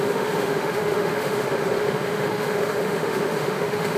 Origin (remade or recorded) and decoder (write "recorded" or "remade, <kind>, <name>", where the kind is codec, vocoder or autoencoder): remade, autoencoder, DAC-VAE